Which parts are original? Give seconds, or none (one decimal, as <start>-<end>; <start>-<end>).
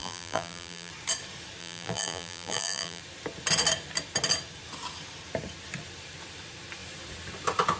0.9-1.6; 3.0-7.8